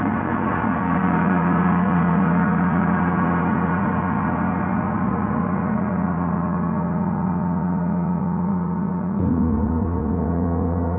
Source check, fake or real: fake